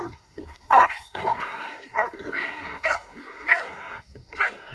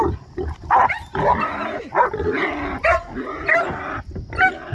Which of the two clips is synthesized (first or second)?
first